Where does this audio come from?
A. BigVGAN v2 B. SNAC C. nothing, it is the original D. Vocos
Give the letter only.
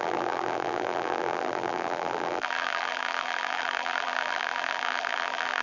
A